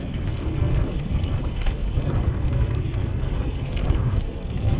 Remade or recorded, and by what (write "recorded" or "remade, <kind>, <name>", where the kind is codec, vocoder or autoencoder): remade, codec, SNAC